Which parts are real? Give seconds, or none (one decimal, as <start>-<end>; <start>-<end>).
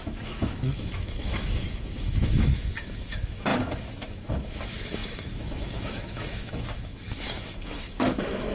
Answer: none